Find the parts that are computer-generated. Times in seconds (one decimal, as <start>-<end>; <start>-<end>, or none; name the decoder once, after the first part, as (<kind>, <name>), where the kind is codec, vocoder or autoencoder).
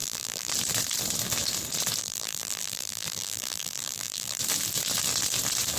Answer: 0.0-0.5 (vocoder, BigVGAN v2); 2.0-4.4